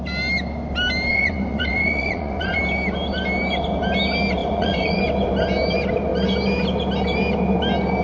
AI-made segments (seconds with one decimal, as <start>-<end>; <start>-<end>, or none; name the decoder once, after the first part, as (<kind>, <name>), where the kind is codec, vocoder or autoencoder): 1.1-2.6 (vocoder, Vocos); 4.4-5.0